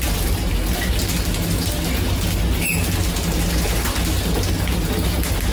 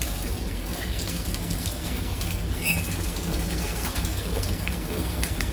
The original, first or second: first